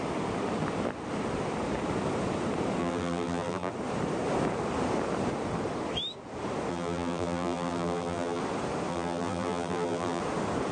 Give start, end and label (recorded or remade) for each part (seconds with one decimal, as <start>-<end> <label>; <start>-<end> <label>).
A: 0.0-2.8 recorded; 2.8-3.7 remade; 3.7-6.7 recorded; 6.7-8.4 remade; 8.4-8.9 recorded; 8.9-10.2 remade; 10.2-10.7 recorded